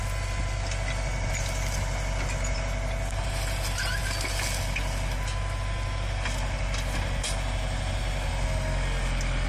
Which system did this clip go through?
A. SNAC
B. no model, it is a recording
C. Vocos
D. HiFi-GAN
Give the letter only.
B